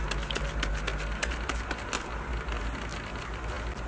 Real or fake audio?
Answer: real